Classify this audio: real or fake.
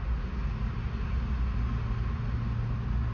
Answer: real